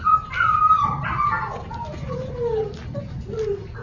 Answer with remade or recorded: recorded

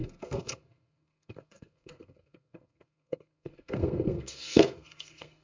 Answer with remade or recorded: remade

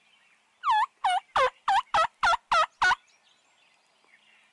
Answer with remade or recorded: recorded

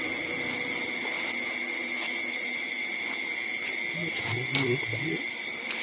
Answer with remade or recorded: recorded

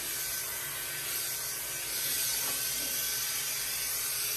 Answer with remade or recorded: recorded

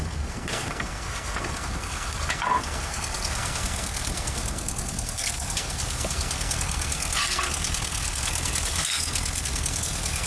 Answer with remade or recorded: remade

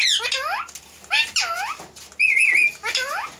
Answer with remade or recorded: recorded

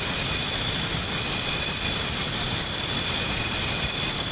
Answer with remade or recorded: recorded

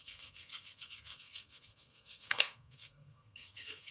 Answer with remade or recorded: remade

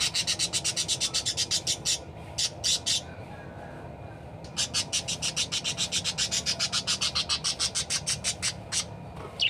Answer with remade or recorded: recorded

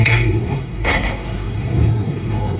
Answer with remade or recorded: remade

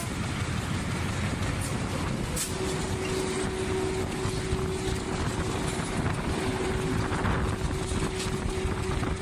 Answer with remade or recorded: recorded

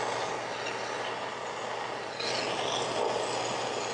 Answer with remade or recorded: recorded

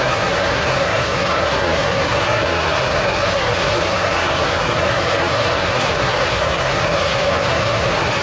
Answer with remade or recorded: remade